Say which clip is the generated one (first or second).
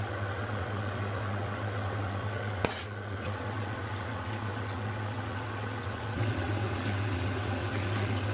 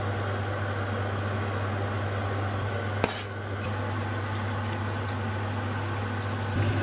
first